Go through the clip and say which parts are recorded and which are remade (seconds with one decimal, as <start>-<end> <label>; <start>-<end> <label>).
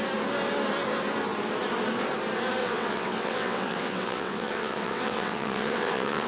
0.0-2.6 recorded; 2.6-6.3 remade